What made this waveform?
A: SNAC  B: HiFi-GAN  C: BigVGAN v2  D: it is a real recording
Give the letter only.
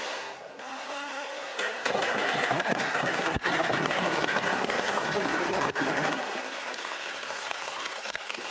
A